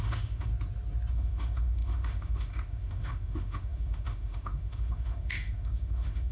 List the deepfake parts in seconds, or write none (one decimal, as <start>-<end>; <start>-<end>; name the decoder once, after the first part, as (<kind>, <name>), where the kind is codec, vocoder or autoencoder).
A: 0.0-0.5 (autoencoder, DAC-VAE); 1.1-6.3